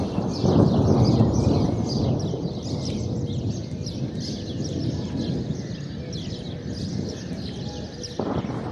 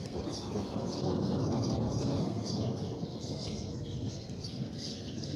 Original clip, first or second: first